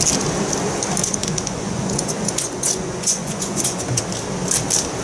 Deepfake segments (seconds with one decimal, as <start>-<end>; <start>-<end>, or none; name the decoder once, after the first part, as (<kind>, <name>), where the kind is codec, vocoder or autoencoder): 1.0-4.0 (vocoder, Vocos)

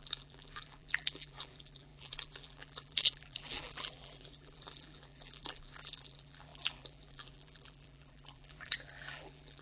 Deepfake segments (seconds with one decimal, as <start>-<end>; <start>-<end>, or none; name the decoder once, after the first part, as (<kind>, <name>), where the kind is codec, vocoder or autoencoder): 0.0-9.6 (vocoder, BigVGAN v2)

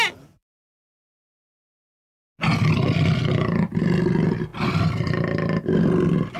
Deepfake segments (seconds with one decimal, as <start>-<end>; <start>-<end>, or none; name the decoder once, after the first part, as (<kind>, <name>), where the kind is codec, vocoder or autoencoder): none